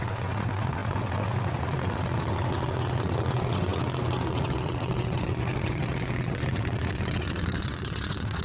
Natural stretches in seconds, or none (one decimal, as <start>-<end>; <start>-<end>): none